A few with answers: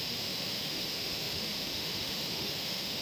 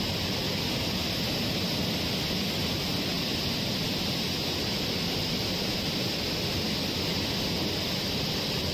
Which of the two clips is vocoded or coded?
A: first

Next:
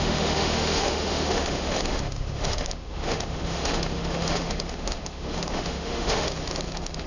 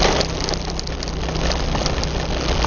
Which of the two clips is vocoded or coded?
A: first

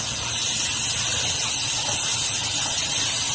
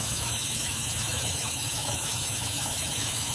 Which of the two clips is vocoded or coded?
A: second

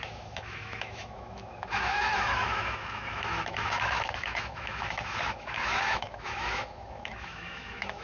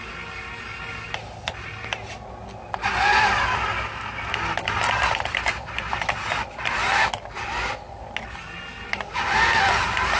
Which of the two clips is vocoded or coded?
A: first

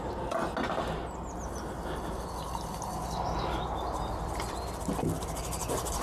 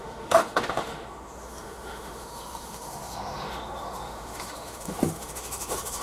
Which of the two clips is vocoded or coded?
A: second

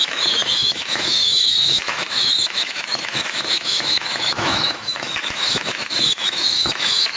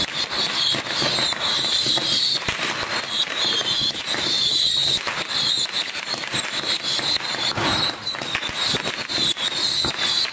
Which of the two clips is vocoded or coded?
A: first